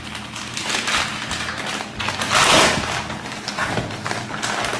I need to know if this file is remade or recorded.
recorded